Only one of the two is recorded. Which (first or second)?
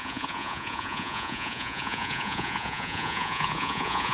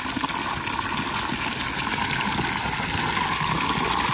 second